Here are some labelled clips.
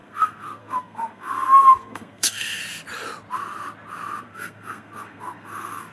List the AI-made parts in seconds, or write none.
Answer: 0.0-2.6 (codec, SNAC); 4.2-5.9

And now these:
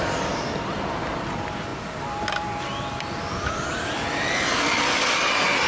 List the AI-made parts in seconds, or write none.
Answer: none

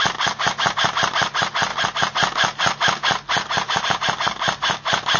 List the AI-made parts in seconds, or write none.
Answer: none

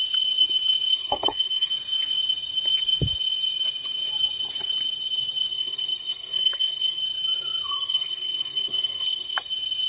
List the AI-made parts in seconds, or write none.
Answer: 0.9-1.7 (codec, SNAC); 5.5-7.0; 7.7-9.5

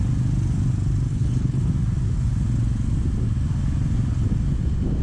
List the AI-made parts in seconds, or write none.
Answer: 1.1-1.7 (codec, HILCodec)

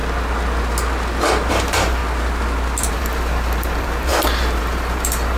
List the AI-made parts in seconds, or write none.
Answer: 1.5-2.0 (vocoder, BigVGAN v2); 2.9-5.4